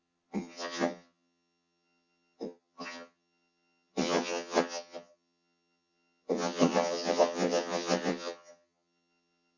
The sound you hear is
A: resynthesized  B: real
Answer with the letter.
A